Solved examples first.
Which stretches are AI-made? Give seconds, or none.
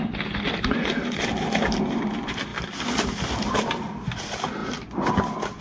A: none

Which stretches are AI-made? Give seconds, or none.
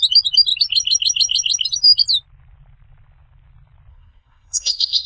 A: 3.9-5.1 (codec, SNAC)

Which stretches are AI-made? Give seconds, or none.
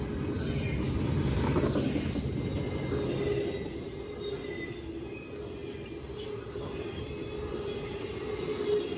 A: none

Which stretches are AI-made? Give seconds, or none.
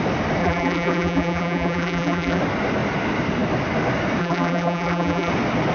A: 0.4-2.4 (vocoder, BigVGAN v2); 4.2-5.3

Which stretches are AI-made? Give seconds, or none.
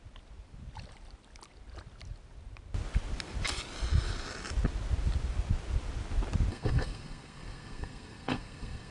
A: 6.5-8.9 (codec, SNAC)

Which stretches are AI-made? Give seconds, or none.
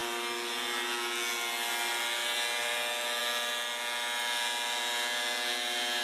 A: none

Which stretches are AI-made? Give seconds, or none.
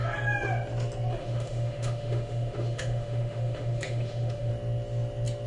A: 1.2-4.5 (autoencoder, DAC-VAE)